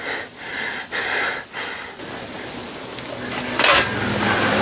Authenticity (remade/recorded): recorded